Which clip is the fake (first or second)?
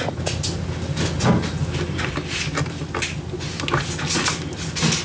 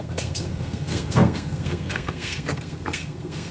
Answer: second